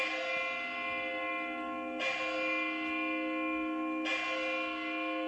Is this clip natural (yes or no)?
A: yes